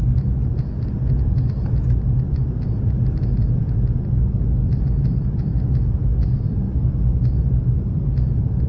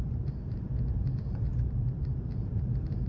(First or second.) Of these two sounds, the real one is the first